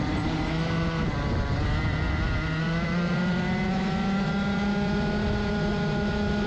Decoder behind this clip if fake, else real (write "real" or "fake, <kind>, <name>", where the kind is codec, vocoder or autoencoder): real